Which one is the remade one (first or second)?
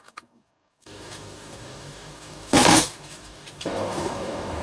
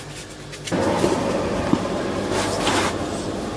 first